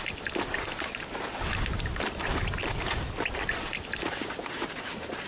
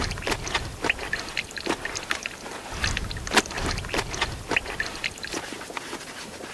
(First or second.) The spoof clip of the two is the first